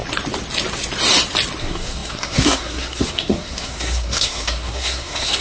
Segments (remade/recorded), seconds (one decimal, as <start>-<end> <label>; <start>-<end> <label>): 0.0-1.6 recorded; 1.6-5.4 remade